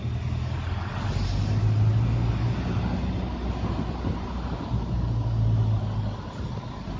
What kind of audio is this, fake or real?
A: real